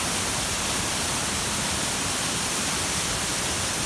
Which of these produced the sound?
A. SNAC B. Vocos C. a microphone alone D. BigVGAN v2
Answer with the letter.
C